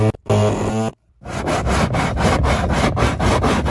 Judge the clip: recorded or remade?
recorded